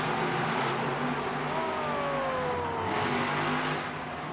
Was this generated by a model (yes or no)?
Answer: no